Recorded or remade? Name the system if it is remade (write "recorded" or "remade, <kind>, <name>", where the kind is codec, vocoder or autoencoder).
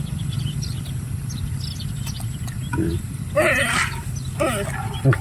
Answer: remade, vocoder, BigVGAN v2